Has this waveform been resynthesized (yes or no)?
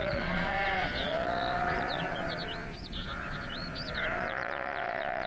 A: yes